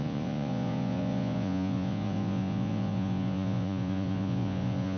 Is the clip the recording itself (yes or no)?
no